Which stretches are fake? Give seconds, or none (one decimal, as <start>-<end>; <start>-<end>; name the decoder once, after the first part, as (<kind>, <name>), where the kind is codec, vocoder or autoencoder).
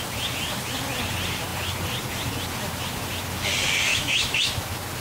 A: 3.9-4.5 (autoencoder, DAC-VAE)